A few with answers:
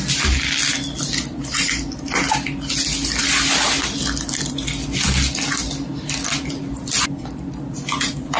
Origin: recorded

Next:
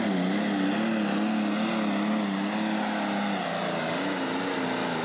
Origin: recorded